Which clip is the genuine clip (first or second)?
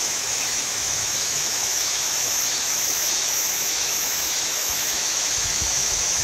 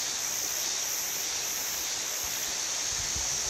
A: second